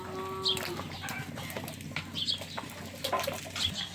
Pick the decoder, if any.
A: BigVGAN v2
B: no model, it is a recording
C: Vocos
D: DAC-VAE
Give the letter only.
B